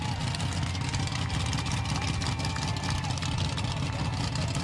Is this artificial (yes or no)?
no